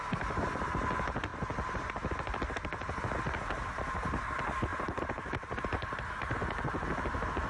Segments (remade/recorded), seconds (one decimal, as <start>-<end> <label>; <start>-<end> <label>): 0.0-4.7 recorded; 4.7-6.4 remade; 6.4-7.5 recorded